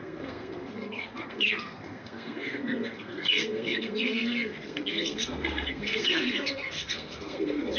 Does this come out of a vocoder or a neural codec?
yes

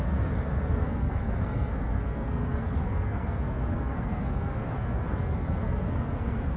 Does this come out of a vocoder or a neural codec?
yes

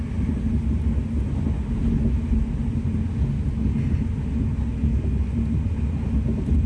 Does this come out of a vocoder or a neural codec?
no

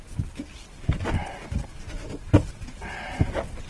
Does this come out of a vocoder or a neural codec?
no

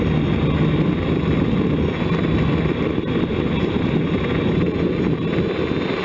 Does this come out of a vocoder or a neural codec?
no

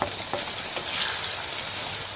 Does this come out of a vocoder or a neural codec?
no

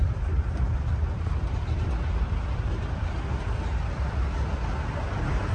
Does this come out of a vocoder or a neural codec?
no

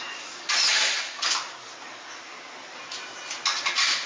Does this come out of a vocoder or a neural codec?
no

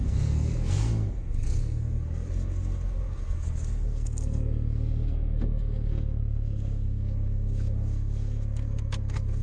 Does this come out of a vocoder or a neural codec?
yes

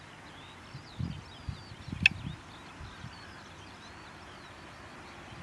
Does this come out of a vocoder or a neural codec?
no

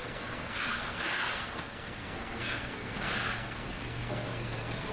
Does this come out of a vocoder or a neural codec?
yes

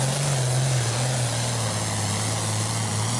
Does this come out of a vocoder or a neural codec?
no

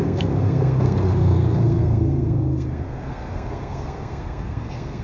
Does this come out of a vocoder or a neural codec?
yes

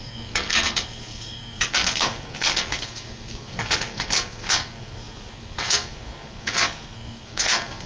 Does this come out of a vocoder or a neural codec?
yes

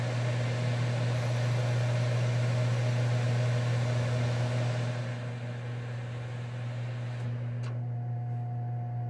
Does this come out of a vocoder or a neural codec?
no